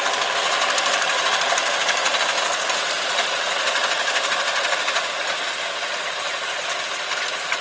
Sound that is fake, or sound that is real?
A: real